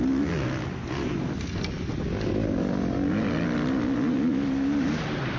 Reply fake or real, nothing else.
real